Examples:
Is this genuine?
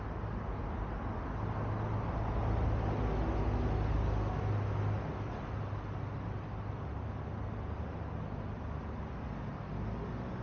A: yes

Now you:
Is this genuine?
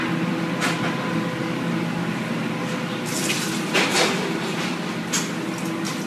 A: yes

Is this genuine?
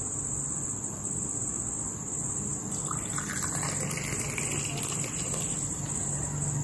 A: yes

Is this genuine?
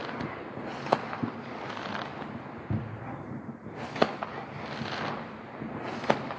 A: yes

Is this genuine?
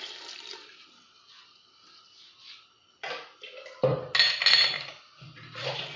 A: yes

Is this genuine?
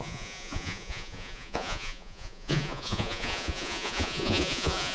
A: no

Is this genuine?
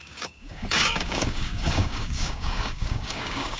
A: no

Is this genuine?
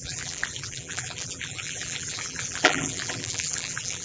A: no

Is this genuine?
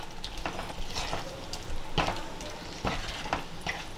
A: yes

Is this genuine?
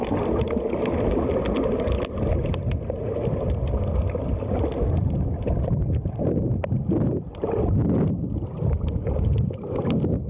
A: yes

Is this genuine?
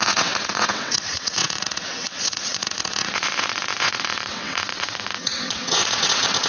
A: no